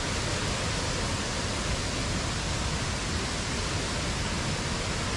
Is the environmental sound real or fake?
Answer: real